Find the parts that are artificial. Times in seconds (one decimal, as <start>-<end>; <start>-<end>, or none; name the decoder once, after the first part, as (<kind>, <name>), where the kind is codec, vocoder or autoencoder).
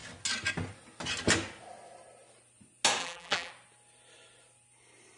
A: 3.0-3.5 (vocoder, BigVGAN v2)